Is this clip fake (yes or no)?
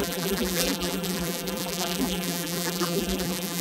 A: yes